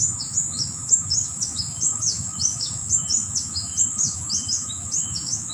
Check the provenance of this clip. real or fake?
fake